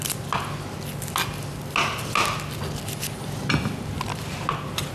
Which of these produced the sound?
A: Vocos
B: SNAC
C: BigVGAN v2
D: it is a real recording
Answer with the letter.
D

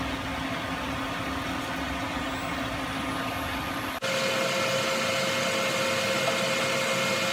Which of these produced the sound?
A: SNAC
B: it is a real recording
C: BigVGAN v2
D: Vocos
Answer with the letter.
B